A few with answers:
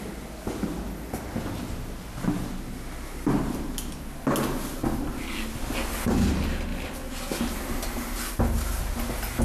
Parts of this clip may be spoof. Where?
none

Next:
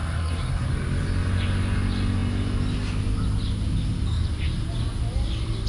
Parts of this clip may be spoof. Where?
0.0-0.7 (codec, SNAC)

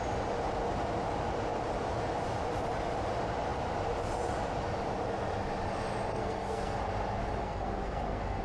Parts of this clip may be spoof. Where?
6.1-6.8 (codec, SNAC); 7.4-8.4

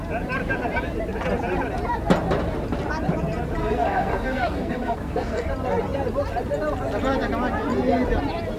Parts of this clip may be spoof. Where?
3.6-5.5 (codec, SNAC)

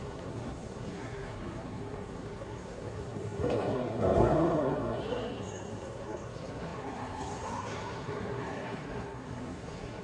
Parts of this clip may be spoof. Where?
0.0-10.0 (codec, SNAC)